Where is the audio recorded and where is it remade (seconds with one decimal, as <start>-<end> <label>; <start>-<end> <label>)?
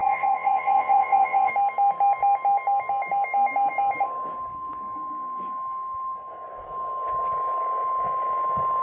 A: 0.0-1.5 remade; 1.5-8.8 recorded